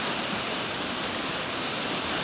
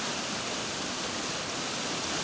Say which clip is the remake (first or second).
first